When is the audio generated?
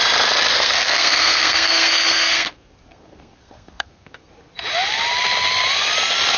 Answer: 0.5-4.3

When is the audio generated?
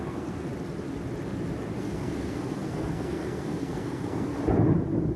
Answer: 0.0-0.5; 1.8-4.3